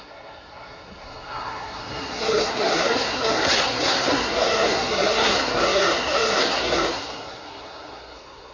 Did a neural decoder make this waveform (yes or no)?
yes